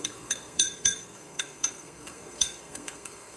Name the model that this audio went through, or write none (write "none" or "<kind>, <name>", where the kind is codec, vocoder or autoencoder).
codec, SNAC